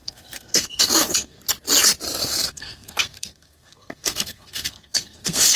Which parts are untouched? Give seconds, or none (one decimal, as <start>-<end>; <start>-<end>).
1.4-2.2